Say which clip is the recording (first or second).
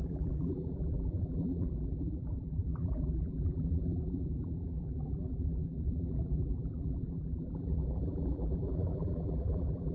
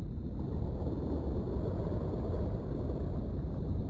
second